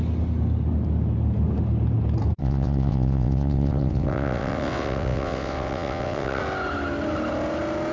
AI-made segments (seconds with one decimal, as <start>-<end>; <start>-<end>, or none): 2.4-6.4